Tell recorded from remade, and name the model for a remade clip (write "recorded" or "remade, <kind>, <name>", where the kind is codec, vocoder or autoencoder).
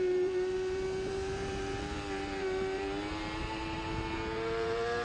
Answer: remade, vocoder, BigVGAN v2